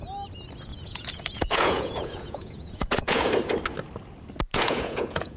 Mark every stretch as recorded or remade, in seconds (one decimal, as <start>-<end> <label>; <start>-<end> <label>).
0.0-0.7 recorded; 0.7-3.3 remade; 3.3-4.5 recorded; 4.5-5.4 remade